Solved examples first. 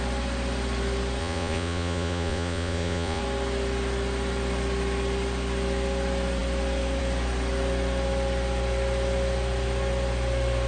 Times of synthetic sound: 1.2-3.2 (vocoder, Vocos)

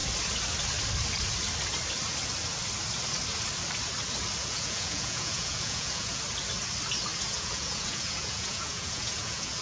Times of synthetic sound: 4.4-6.2 (vocoder, Vocos); 7.1-9.6

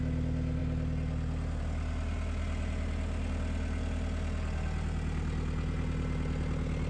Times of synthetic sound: none

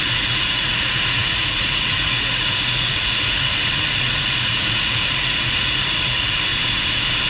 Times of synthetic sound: 0.0-6.5 (vocoder, Vocos)

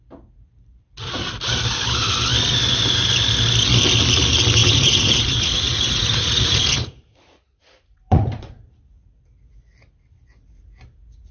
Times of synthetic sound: 4.6-8.6 (vocoder, Vocos)

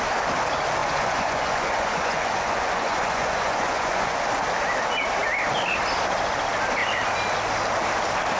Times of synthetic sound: 0.8-4.2 (vocoder, Vocos)